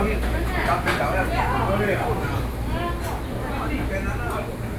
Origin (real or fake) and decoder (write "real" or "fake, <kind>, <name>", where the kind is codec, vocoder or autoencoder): real